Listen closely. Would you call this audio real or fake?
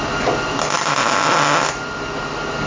real